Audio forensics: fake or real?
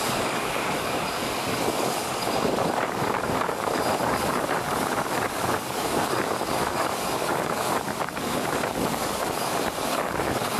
fake